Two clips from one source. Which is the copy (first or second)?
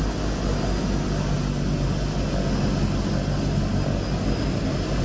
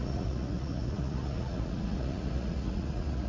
second